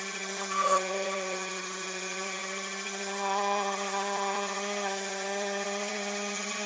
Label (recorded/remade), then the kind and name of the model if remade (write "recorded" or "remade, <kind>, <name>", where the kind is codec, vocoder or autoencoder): remade, vocoder, HiFi-GAN